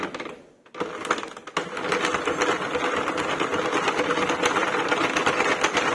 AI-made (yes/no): no